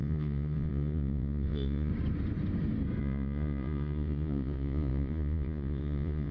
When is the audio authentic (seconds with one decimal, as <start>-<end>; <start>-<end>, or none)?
1.9-3.0